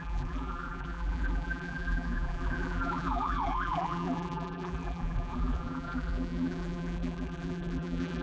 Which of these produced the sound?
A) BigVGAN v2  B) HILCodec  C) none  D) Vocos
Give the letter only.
A